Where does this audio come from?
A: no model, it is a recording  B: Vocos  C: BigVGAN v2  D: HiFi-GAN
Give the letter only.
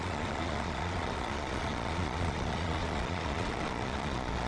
B